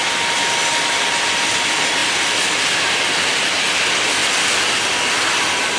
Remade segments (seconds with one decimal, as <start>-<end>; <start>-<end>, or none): none